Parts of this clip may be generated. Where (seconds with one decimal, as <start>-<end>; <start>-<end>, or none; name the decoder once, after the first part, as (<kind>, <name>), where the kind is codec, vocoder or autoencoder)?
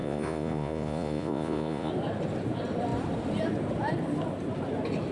0.0-1.9 (vocoder, Vocos)